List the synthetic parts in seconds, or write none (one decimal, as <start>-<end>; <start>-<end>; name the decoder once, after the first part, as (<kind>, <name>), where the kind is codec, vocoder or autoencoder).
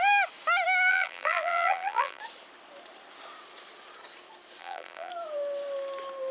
0.9-2.2 (vocoder, BigVGAN v2); 4.6-5.1